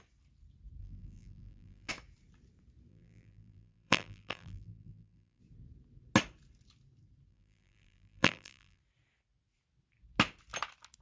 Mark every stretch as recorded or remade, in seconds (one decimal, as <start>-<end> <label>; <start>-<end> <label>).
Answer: 0.0-0.8 recorded; 0.8-1.9 remade; 1.9-2.9 recorded; 2.9-5.4 remade; 5.4-7.3 recorded; 7.3-8.8 remade; 8.8-11.0 recorded